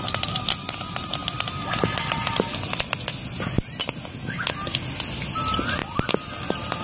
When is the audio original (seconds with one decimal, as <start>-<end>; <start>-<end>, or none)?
0.0-6.8